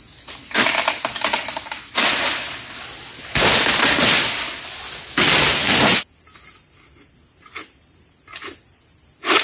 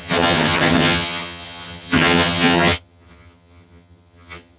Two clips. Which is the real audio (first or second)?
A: first